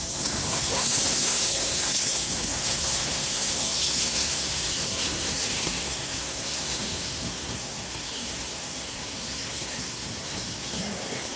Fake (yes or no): yes